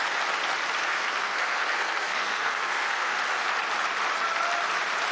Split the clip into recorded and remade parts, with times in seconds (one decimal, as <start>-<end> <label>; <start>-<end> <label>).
0.0-0.8 recorded; 0.8-3.1 remade; 3.1-5.1 recorded